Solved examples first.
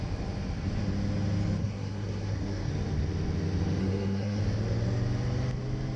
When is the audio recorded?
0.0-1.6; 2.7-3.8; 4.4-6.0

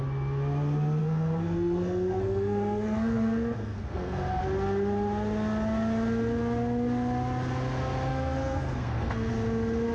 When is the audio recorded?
0.0-1.0; 4.4-8.1; 9.3-9.9